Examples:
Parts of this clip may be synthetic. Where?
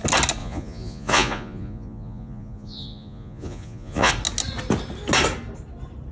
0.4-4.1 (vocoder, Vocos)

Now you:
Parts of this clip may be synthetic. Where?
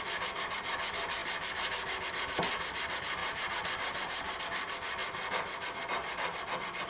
3.2-4.4 (vocoder, BigVGAN v2); 5.0-5.8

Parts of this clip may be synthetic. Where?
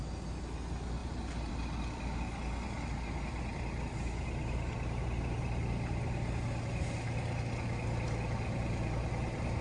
none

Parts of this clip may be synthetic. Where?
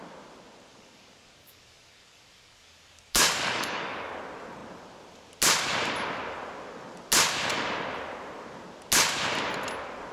0.7-4.1 (codec, DAC)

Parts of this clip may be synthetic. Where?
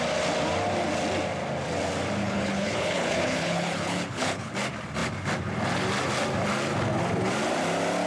2.2-4.5 (codec, HILCodec)